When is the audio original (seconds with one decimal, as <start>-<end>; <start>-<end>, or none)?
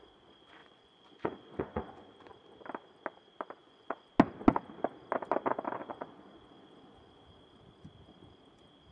0.0-0.6; 2.3-3.6; 4.1-5.8; 7.3-8.9